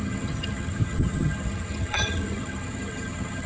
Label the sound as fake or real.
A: fake